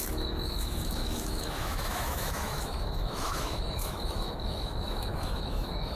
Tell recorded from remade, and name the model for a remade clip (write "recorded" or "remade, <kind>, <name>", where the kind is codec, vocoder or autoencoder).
remade, autoencoder, DAC-VAE